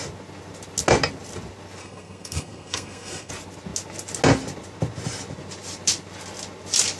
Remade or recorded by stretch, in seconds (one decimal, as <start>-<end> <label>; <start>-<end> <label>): 0.0-1.8 recorded; 1.8-3.3 remade; 3.3-7.0 recorded